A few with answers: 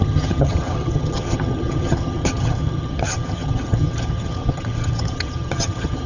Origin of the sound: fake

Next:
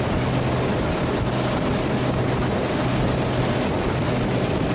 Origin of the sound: real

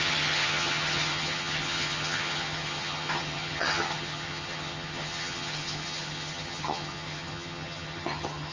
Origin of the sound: fake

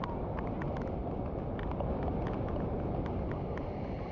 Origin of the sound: real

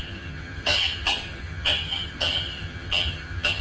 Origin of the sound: fake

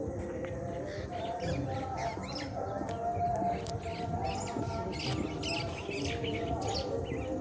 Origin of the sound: real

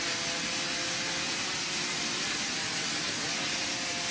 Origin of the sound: real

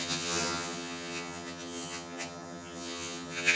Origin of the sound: fake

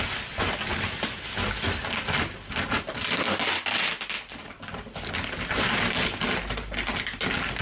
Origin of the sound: real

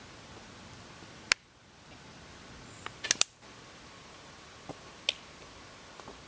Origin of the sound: real